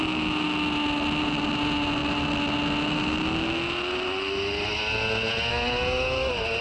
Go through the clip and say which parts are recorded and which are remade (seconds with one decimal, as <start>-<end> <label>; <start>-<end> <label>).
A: 0.0-6.6 recorded